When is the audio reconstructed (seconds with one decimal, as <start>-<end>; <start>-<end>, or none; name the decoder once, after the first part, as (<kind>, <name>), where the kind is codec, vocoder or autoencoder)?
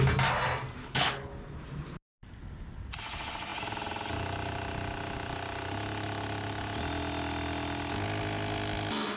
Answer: 0.8-1.3 (codec, HILCodec)